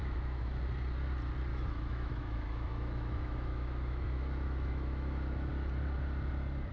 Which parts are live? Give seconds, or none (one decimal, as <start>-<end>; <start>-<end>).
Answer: 0.6-1.5; 5.5-6.7